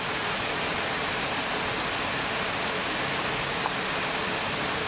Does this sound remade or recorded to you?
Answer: recorded